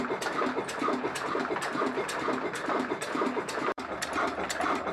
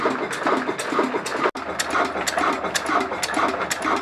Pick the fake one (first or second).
first